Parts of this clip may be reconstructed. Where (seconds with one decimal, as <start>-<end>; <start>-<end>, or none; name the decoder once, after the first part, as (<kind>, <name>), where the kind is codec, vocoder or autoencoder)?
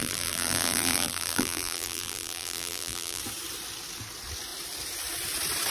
0.0-3.2 (vocoder, BigVGAN v2)